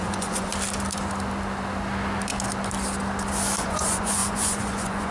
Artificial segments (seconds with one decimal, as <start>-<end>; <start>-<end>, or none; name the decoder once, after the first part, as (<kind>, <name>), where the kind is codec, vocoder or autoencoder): 0.0-0.5 (vocoder, Vocos); 3.6-5.1